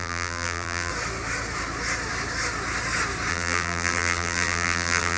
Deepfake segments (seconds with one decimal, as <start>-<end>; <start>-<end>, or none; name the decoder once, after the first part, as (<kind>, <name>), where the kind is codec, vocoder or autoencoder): 0.0-0.9 (vocoder, BigVGAN v2); 3.3-5.2